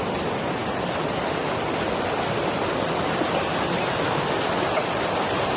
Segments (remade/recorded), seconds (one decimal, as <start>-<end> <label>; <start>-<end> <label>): 0.0-5.6 recorded